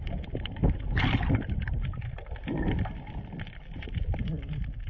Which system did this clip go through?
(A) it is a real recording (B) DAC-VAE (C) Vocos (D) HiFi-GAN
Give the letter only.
A